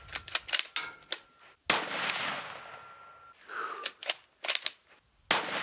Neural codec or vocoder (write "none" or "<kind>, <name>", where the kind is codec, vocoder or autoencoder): none